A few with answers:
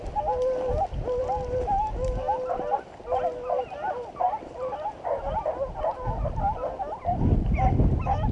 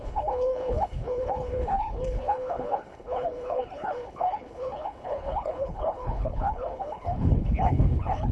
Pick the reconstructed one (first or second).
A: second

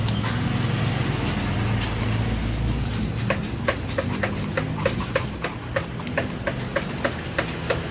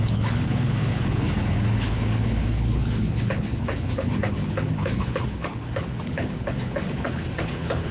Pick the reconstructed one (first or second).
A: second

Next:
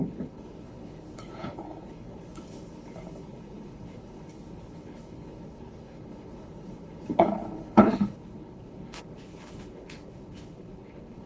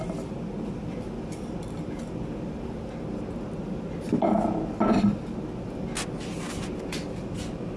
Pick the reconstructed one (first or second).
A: first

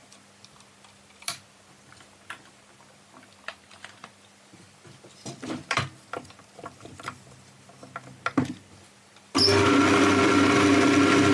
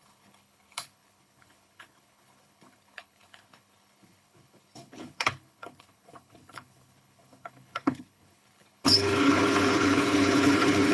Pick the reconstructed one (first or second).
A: second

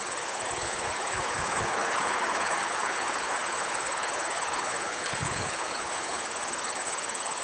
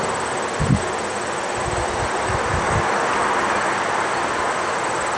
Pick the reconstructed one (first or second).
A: first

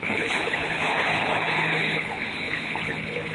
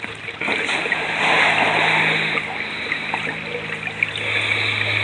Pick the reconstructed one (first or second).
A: first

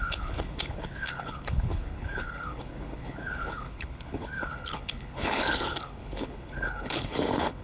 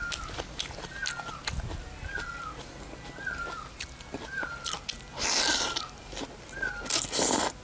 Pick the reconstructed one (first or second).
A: first